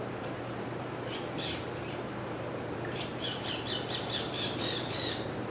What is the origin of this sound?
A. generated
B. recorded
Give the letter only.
A